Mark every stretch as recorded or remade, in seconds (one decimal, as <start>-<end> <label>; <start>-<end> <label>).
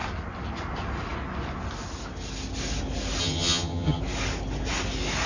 0.0-3.2 recorded; 3.2-4.0 remade; 4.0-5.3 recorded